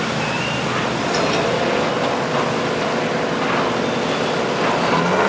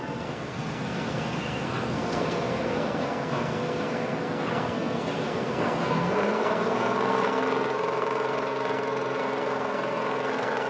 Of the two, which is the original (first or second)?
first